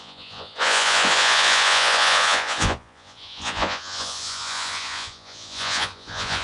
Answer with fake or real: fake